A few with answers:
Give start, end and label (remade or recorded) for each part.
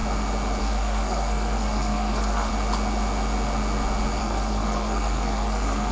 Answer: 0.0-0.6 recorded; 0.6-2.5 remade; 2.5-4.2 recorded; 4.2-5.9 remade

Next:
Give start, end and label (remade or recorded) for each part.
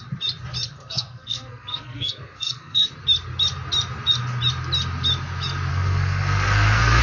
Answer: 0.0-0.7 recorded; 0.7-2.9 remade; 2.9-5.7 recorded; 5.7-7.0 remade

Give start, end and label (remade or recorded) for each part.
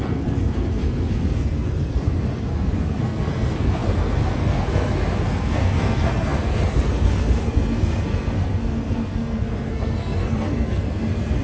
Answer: 0.0-11.4 remade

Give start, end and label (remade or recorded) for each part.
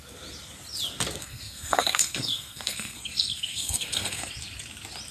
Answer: 0.0-1.2 recorded; 1.2-4.3 remade; 4.3-5.1 recorded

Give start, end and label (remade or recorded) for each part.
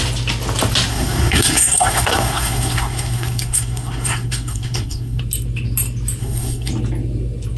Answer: 0.0-0.9 recorded; 0.9-5.2 remade; 5.2-6.2 recorded; 6.2-6.7 remade; 6.7-7.6 recorded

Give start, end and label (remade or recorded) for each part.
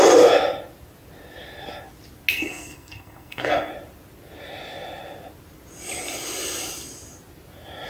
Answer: 0.0-2.3 recorded; 2.3-3.7 remade; 3.7-7.9 recorded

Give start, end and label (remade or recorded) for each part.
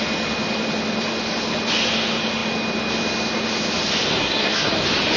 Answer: 0.0-4.2 recorded; 4.2-4.7 remade; 4.7-5.2 recorded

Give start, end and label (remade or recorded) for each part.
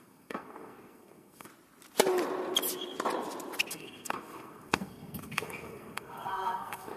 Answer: 0.0-1.5 remade; 1.5-3.7 recorded; 3.7-7.0 remade